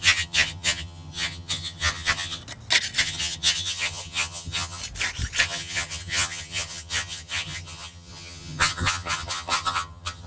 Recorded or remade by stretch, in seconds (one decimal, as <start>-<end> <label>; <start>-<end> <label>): 0.0-2.4 remade; 2.4-3.0 recorded; 3.0-4.8 remade; 4.8-5.4 recorded; 5.4-10.3 remade